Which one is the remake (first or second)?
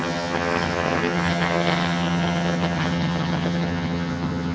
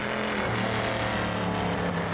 first